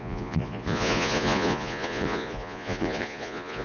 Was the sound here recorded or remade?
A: remade